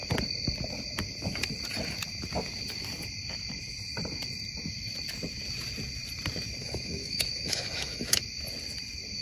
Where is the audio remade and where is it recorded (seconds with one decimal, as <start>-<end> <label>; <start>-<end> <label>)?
0.0-6.6 recorded; 6.6-8.2 remade; 8.2-9.2 recorded